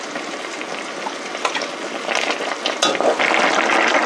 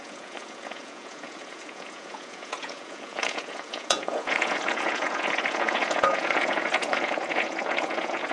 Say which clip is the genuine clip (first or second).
first